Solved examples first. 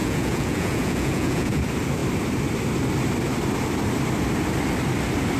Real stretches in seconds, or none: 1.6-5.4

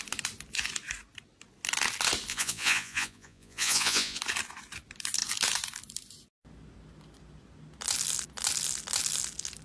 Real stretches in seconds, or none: 0.0-2.3; 4.2-9.6

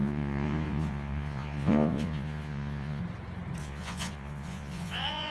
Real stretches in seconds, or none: 3.0-3.6